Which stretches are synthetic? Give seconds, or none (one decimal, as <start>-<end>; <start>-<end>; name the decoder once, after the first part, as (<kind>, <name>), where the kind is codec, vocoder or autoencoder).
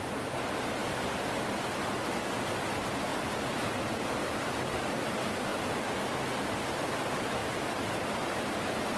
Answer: 0.8-1.5 (vocoder, BigVGAN v2); 3.1-5.0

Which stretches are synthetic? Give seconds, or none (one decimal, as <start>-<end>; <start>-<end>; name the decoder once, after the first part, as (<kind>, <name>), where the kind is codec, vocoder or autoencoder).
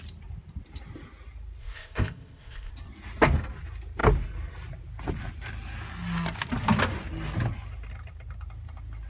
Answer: 1.6-2.7 (codec, ZipCodec)